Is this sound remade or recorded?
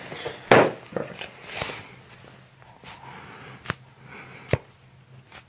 recorded